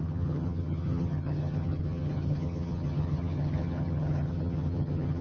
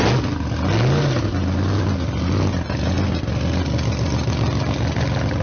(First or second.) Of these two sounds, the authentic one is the second